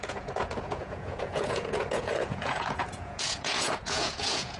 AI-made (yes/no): yes